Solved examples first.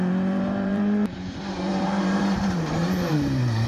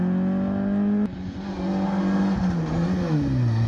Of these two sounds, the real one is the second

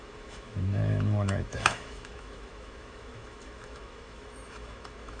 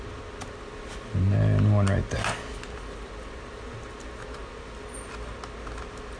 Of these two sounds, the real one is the second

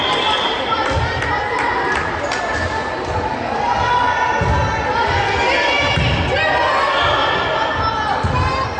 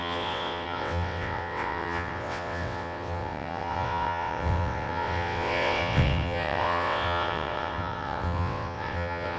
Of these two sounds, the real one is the first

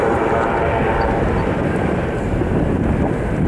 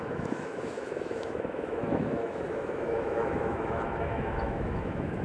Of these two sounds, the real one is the first